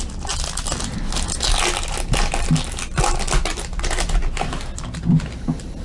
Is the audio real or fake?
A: real